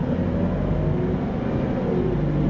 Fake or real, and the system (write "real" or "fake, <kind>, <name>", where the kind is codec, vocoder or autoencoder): real